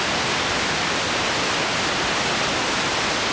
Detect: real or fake real